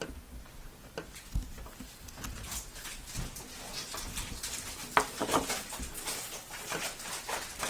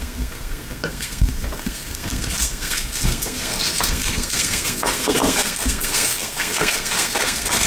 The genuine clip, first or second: first